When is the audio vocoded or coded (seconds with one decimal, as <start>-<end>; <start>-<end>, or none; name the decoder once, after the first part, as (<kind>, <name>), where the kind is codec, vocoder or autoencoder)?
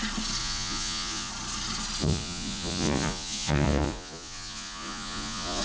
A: 0.4-1.3 (vocoder, Vocos); 2.0-5.6